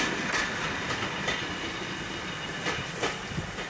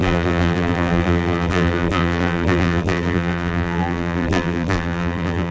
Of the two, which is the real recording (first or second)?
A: first